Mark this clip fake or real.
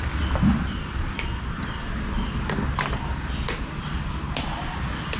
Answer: real